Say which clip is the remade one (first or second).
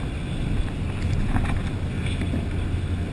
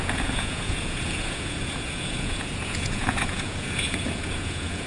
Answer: second